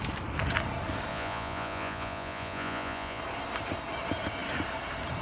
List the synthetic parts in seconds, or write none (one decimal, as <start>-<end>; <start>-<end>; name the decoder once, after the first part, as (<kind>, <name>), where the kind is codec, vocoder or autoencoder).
1.1-3.2 (vocoder, Vocos)